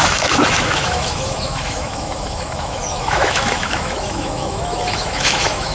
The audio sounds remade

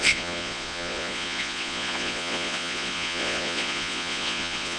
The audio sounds remade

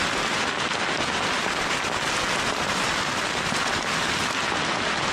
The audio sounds recorded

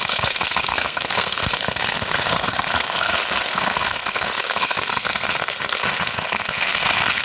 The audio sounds remade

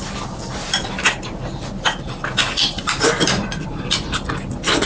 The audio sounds recorded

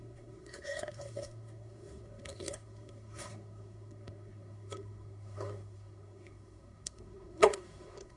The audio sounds remade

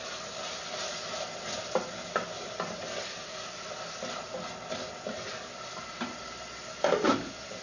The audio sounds recorded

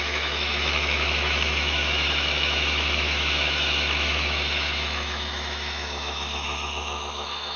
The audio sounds remade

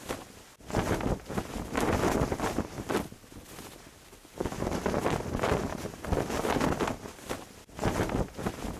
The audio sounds recorded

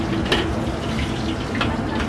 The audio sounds recorded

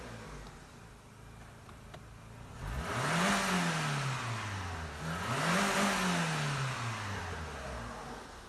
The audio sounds recorded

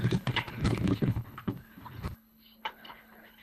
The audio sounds remade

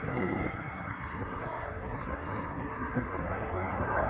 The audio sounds remade